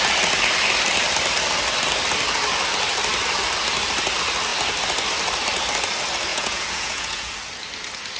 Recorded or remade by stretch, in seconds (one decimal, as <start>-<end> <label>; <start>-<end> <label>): 0.0-6.3 recorded; 6.3-7.3 remade; 7.3-8.2 recorded